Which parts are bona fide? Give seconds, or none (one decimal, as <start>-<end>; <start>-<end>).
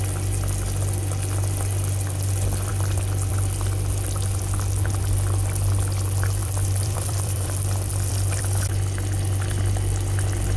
0.0-6.4; 8.4-10.6